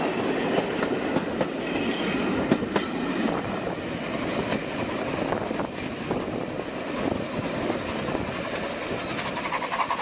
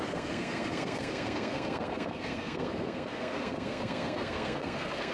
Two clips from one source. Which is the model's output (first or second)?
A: second